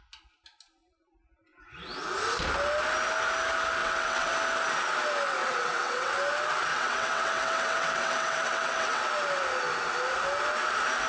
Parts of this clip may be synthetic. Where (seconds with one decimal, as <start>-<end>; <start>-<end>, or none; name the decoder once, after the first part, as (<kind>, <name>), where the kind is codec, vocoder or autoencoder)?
3.8-4.3 (vocoder, WaveNeXt); 5.4-6.1; 6.7-9.1